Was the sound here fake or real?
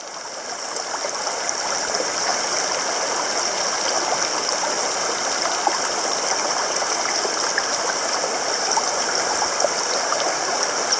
real